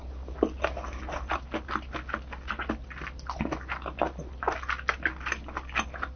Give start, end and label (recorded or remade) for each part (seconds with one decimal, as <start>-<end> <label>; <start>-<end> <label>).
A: 0.0-6.2 recorded